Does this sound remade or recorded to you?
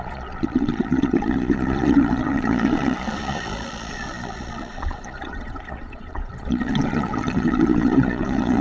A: remade